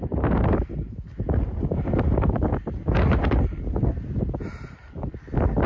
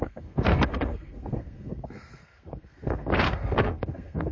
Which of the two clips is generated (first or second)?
second